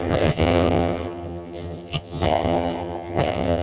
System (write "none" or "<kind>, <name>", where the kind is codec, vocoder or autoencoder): vocoder, HiFi-GAN